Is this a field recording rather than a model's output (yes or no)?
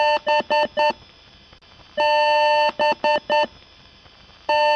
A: yes